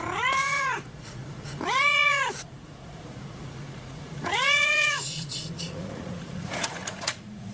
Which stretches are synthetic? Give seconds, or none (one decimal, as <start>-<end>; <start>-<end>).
0.0-7.5